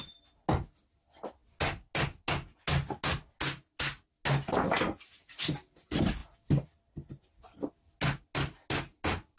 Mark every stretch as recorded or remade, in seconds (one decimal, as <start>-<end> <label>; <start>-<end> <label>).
0.0-9.4 recorded